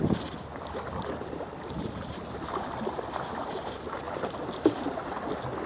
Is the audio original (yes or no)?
yes